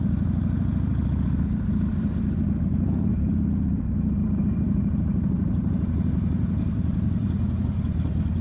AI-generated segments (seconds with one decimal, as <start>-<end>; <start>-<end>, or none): 0.9-2.2; 3.1-3.8; 4.2-7.6